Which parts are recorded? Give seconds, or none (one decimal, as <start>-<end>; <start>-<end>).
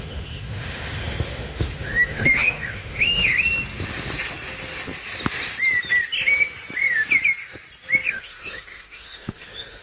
3.3-8.1